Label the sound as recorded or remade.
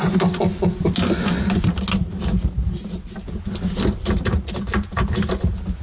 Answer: recorded